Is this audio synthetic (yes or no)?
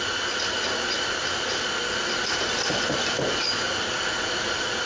no